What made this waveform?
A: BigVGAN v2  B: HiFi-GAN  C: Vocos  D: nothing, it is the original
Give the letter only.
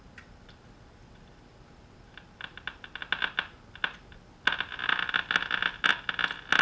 D